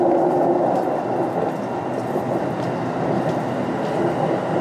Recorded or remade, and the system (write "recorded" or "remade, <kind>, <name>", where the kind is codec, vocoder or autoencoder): recorded